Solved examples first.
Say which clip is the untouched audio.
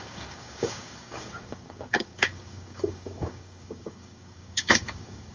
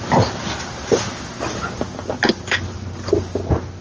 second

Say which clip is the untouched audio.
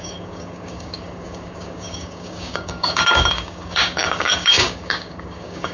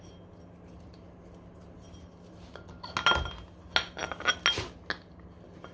second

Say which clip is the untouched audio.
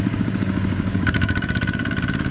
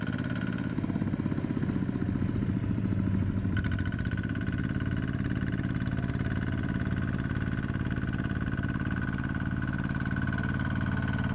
second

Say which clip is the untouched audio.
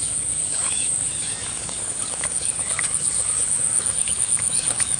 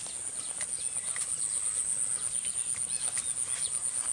second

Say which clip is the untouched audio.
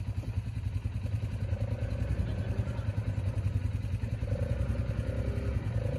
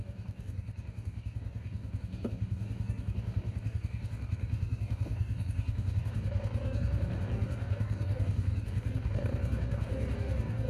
first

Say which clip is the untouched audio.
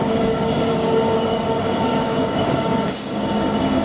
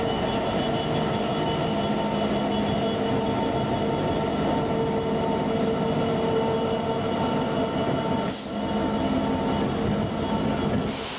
second